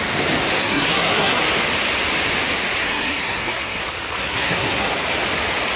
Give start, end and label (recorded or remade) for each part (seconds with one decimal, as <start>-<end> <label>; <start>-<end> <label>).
0.0-0.6 recorded; 0.6-1.4 remade; 1.4-2.8 recorded; 2.8-3.8 remade; 3.8-4.2 recorded; 4.2-4.9 remade; 4.9-5.8 recorded